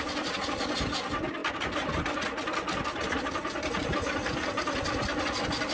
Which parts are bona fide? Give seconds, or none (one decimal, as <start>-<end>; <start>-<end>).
0.0-5.7